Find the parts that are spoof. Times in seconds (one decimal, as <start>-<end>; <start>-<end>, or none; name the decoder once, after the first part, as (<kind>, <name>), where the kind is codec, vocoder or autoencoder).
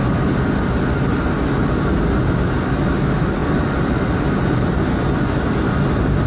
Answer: 3.4-6.3 (vocoder, BigVGAN v2)